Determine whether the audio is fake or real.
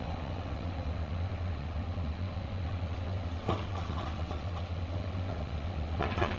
fake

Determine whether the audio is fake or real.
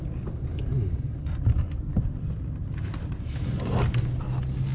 real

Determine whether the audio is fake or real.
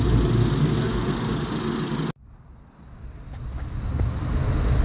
real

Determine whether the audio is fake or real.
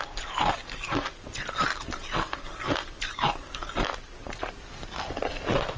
real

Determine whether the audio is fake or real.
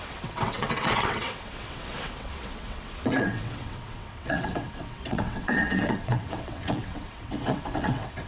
fake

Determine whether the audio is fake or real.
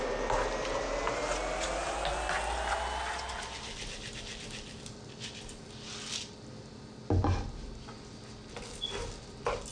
real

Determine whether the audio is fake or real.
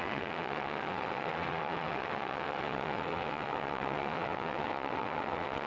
fake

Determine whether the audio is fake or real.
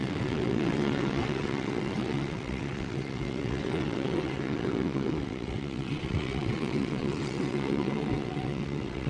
fake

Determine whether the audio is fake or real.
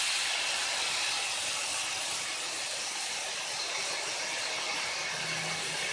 real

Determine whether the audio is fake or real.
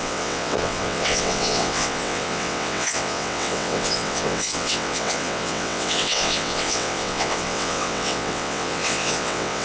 fake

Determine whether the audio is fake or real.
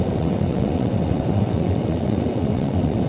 fake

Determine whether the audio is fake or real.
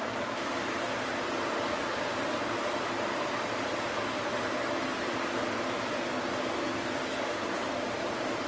real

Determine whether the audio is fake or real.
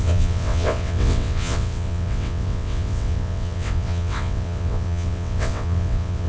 fake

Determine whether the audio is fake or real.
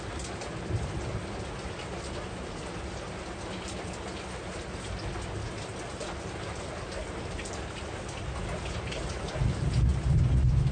real